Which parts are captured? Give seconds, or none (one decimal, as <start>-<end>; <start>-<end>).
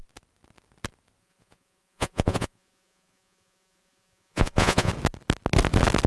0.0-1.2; 4.9-6.1